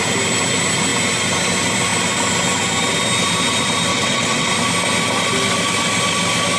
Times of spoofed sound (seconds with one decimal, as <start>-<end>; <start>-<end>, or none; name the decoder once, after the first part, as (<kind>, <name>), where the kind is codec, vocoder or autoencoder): 3.9-4.5 (vocoder, WaveNeXt)